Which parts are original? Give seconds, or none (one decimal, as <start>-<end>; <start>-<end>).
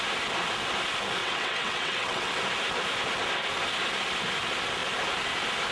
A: 0.0-1.2; 2.3-5.7